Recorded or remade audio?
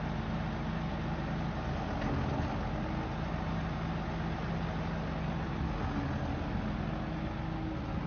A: recorded